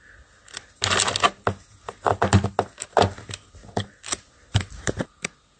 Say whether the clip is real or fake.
real